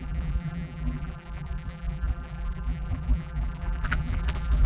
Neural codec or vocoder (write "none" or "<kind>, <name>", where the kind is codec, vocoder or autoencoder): vocoder, BigVGAN v2